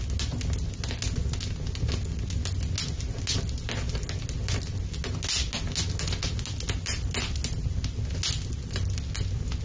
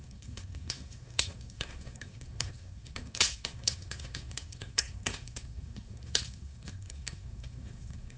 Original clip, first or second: first